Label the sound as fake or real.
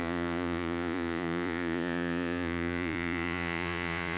fake